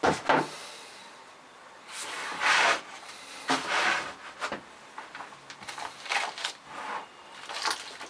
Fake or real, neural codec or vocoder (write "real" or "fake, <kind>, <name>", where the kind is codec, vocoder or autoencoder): real